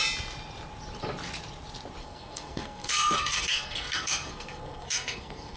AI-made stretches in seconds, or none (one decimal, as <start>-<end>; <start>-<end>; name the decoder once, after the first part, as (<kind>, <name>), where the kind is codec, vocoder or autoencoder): 2.0-5.6 (codec, SNAC)

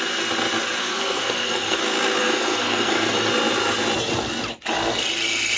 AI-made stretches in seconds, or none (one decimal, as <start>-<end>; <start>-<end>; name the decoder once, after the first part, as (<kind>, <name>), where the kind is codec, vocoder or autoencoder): 0.8-1.8 (codec, SNAC); 2.2-3.3

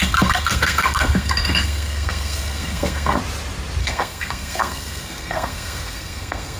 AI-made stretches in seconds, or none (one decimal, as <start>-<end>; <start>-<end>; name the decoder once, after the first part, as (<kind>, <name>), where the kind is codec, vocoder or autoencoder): 0.0-3.2 (codec, SNAC); 3.8-6.6

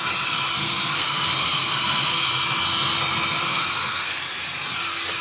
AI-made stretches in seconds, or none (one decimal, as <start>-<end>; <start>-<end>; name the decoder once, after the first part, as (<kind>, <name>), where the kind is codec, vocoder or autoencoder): 0.6-2.3 (codec, SNAC); 3.4-4.2

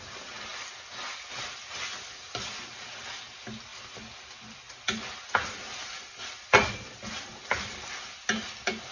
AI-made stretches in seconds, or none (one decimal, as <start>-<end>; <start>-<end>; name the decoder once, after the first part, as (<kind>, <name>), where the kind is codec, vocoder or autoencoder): none

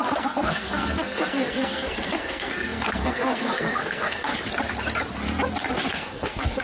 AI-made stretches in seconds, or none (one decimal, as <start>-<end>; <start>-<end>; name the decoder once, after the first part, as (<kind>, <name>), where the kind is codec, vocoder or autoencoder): 0.0-4.3 (codec, SNAC); 5.8-6.6

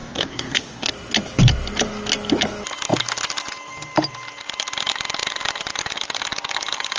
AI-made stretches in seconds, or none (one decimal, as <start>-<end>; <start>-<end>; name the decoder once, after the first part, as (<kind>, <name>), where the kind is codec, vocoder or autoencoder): 0.0-0.9 (codec, SNAC)

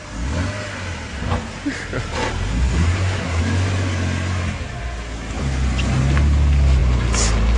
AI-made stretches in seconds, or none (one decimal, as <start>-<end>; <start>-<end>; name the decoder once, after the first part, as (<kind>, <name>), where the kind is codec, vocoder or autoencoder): 2.5-3.4 (codec, SNAC)